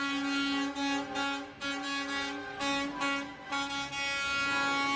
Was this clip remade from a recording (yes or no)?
no